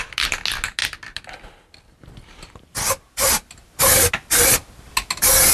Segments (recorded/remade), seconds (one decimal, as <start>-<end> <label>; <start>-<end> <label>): 0.0-5.5 recorded